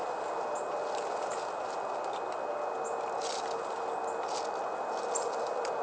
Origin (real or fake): real